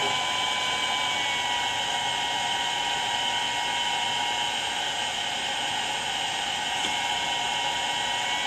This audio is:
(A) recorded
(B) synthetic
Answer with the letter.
A